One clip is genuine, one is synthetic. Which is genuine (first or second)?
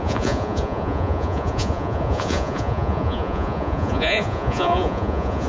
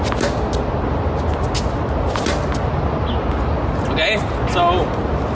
second